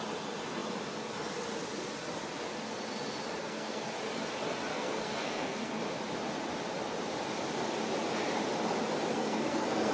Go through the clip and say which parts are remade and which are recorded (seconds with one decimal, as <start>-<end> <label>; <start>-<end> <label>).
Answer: 0.0-3.4 recorded; 3.4-3.9 remade; 3.9-4.7 recorded; 4.7-5.8 remade; 5.8-9.1 recorded; 9.1-9.9 remade